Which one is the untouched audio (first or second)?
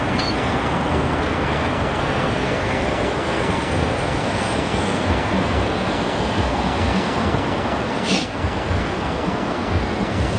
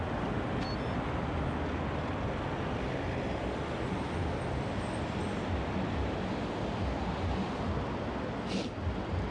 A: second